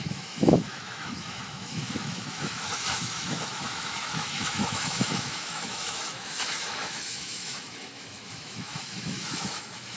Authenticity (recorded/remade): remade